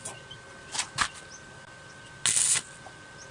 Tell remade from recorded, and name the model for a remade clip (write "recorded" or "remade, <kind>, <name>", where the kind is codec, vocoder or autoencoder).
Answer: recorded